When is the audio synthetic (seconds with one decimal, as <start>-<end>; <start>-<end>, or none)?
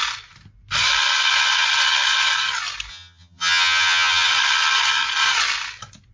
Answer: 2.9-4.3